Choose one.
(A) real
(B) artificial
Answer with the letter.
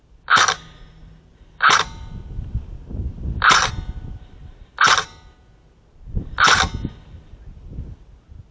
A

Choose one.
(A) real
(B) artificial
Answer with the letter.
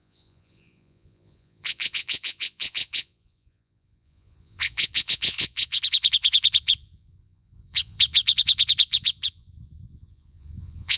B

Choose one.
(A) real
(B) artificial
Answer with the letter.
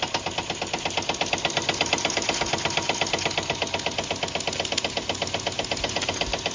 A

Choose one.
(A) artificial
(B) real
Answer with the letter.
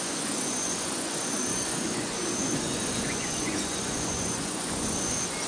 A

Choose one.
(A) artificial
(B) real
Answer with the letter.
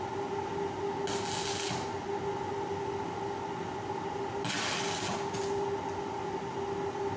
B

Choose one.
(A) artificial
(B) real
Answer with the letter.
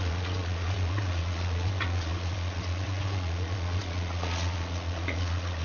A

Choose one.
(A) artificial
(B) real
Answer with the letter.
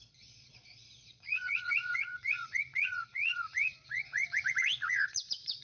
A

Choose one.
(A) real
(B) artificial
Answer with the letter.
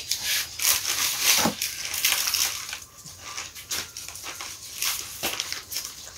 A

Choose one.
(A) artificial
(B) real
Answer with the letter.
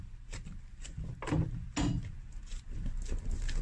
B